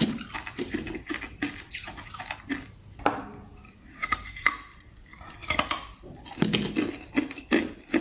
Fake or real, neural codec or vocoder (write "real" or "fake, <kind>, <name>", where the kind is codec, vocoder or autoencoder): real